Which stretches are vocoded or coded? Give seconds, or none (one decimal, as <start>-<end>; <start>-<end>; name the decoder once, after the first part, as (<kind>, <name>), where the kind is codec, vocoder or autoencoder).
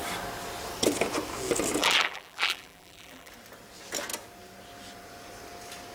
1.8-3.3 (vocoder, BigVGAN v2)